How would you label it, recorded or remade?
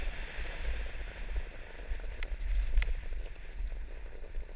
recorded